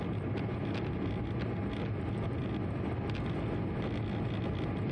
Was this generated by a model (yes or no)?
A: no